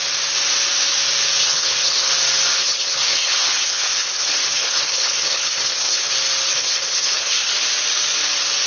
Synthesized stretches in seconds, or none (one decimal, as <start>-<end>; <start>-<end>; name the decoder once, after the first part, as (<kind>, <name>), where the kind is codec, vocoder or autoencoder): 1.4-2.1 (codec, HILCodec); 2.5-6.1; 6.5-7.5